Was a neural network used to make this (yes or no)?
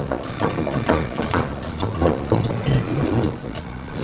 yes